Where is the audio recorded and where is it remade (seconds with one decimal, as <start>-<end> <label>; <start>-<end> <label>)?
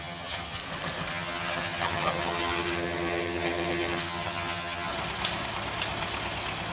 0.0-0.6 remade; 0.6-1.1 recorded; 1.1-4.9 remade; 4.9-6.7 recorded